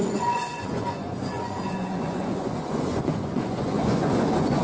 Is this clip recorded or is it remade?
remade